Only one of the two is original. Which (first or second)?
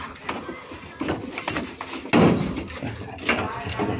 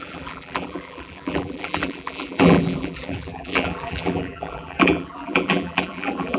first